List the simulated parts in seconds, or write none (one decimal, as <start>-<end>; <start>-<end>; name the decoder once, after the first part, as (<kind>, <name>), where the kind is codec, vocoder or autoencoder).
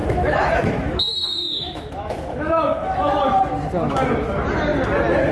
0.0-3.2 (autoencoder, DAC-VAE)